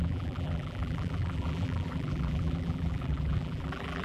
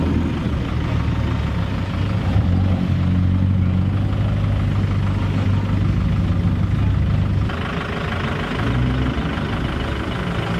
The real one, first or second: second